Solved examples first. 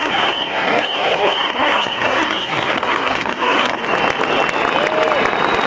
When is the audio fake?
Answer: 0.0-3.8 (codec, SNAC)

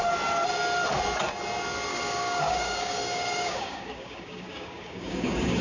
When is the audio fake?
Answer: 1.9-5.6 (codec, DAC)

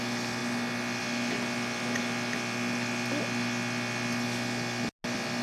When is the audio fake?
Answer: none

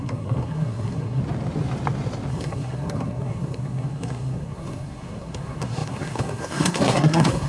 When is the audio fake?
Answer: 0.0-1.2 (codec, SNAC); 2.3-7.5

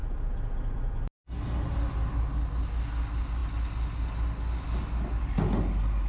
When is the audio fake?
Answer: none